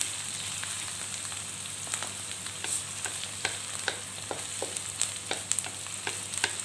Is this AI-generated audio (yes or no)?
no